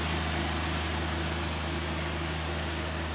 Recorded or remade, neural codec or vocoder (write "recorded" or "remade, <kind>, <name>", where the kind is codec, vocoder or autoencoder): recorded